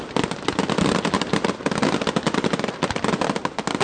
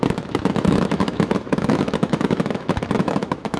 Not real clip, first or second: second